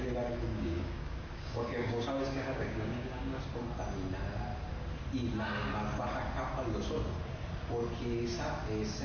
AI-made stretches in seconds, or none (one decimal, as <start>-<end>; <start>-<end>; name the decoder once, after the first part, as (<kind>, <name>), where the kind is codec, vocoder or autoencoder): 0.5-3.4 (codec, DAC)